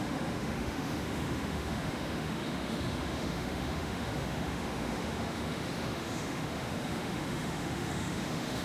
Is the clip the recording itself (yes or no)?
no